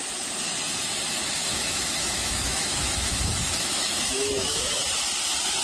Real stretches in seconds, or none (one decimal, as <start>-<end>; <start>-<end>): 0.0-1.4; 4.8-5.6